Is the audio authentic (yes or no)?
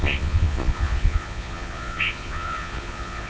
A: no